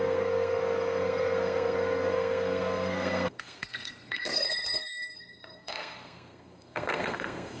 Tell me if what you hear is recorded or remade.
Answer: remade